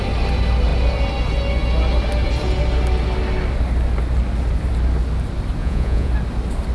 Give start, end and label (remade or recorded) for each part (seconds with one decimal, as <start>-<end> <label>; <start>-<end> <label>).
0.0-5.6 recorded; 5.6-6.1 remade; 6.1-6.7 recorded